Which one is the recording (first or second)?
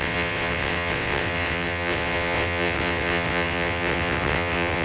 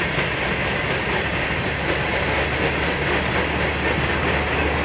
second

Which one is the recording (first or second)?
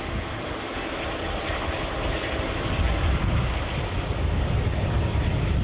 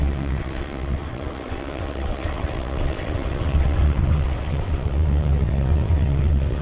first